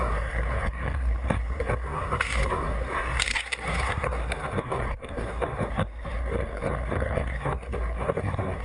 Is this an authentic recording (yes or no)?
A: no